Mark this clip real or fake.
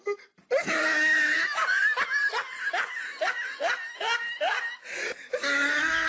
real